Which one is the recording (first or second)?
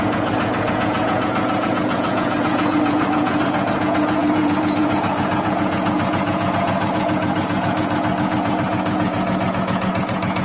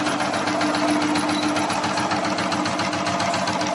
second